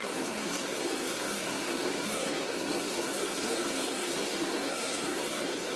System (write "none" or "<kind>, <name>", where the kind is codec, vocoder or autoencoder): codec, SNAC